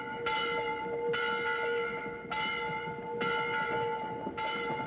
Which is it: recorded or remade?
recorded